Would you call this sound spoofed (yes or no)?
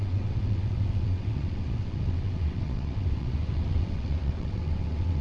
yes